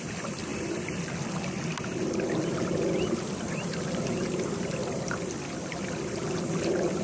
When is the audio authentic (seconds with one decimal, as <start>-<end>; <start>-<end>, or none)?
0.0-7.0